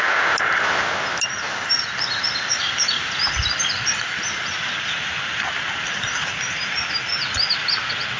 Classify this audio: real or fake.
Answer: real